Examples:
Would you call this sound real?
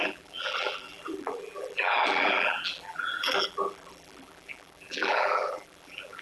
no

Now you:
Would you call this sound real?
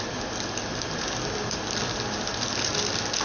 yes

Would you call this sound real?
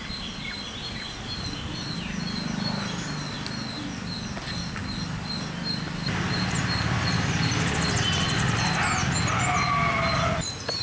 yes